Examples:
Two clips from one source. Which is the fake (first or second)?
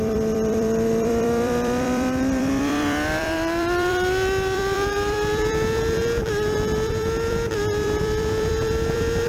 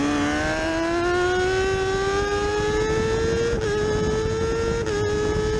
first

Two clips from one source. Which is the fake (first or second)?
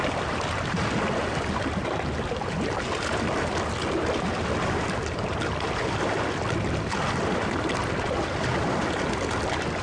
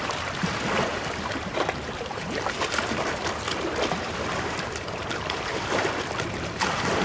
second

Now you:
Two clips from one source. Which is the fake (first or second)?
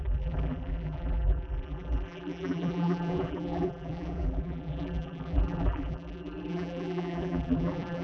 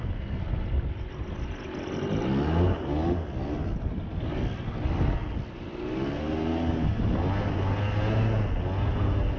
first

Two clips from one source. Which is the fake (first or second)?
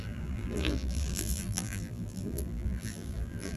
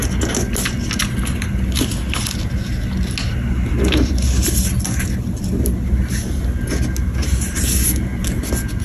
first